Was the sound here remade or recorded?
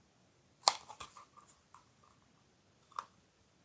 recorded